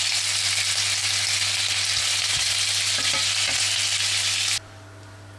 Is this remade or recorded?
recorded